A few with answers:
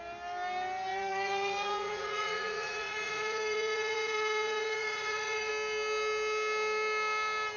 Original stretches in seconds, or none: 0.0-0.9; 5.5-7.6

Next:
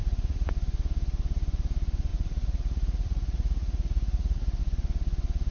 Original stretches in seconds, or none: 0.5-2.1; 4.6-5.5

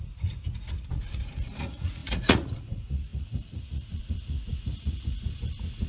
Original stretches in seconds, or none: none

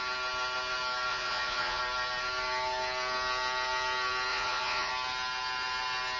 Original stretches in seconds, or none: 0.0-1.1; 1.8-4.3; 4.9-6.2

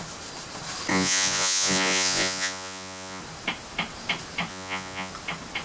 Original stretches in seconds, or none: 0.0-0.9; 3.2-4.5; 5.1-5.6

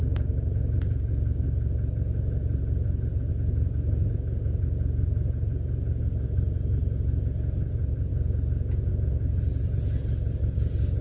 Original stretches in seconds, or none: 0.0-3.3; 6.0-8.1; 8.9-11.0

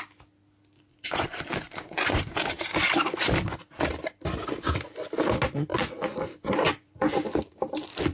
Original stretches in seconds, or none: 0.0-0.9; 2.2-5.7; 7.1-8.1

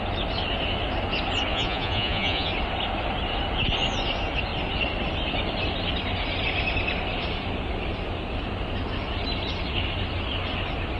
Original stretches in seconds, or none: 0.0-1.5; 2.5-11.0